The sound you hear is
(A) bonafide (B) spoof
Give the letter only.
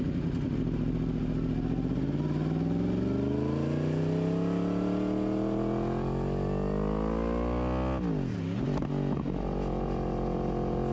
A